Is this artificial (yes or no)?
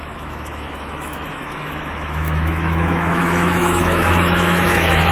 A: yes